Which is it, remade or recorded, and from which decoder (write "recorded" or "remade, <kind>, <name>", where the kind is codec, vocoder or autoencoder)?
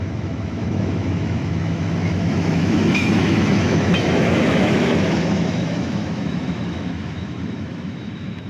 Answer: remade, autoencoder, DAC-VAE